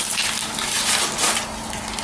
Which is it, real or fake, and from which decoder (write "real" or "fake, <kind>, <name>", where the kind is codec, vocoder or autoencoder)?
real